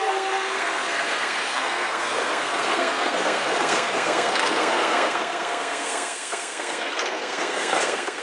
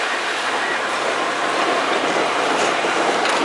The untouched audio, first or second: second